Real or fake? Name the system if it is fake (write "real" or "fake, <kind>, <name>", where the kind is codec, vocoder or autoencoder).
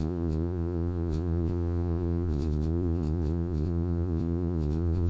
fake, vocoder, Vocos